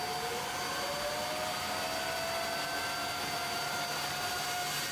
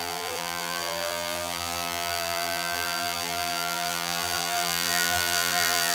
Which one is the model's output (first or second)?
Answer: second